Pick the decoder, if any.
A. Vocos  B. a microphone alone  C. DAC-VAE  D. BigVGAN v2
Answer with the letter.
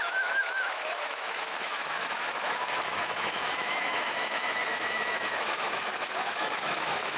C